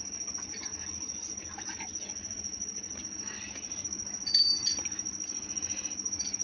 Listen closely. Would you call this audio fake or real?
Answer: real